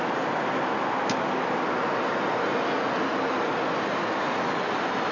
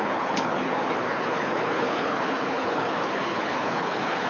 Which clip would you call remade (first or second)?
second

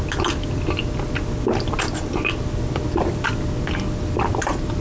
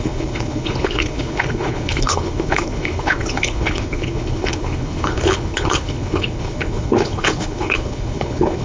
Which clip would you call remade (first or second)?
second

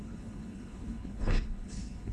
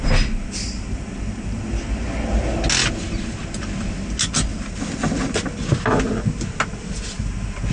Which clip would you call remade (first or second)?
first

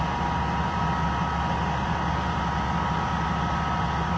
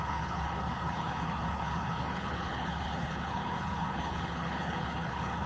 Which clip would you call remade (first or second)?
second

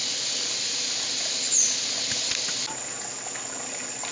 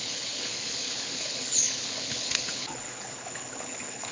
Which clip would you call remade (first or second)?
second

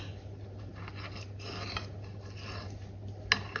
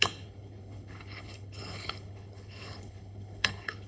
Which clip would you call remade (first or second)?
second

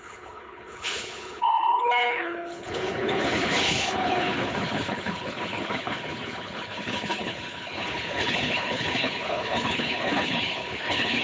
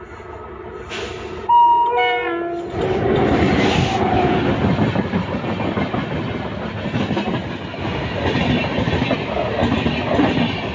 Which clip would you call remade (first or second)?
first